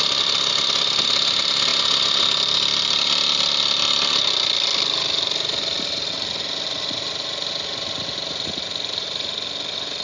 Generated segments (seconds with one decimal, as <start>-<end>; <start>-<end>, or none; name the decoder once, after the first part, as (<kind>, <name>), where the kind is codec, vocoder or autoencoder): none